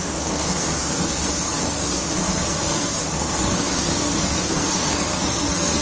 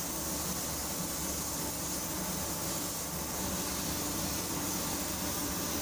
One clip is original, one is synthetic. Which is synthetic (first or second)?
first